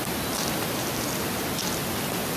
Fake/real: real